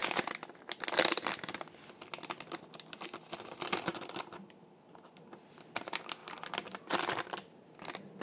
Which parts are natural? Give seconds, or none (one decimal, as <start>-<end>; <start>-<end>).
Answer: 0.0-8.2

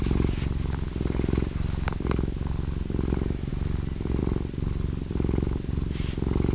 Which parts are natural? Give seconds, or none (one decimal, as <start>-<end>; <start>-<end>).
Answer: 0.0-6.5

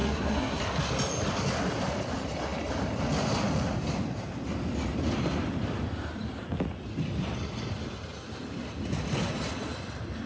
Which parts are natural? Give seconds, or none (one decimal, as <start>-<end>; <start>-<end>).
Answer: 0.6-10.3

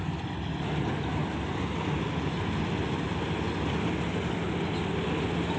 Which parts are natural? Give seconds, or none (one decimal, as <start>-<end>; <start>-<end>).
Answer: 0.0-5.6

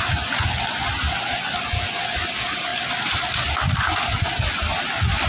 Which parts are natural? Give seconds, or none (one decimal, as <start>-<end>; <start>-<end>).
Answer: 0.0-5.3

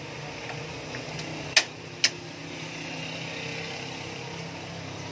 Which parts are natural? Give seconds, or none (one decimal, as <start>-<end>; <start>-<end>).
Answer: 0.0-5.1

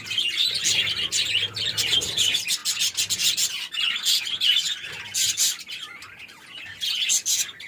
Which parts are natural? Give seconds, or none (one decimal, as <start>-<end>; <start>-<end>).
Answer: 0.0-7.7

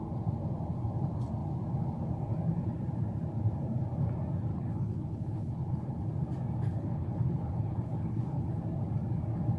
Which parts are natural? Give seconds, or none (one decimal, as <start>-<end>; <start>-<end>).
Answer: 0.0-4.5; 6.1-6.7; 8.6-9.6